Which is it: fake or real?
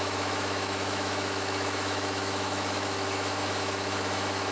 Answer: fake